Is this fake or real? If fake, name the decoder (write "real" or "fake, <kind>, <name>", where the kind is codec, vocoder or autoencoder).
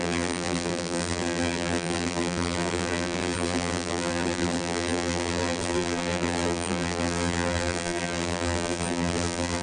fake, vocoder, BigVGAN v2